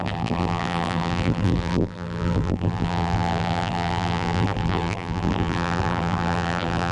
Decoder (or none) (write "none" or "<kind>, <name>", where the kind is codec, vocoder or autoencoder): vocoder, BigVGAN v2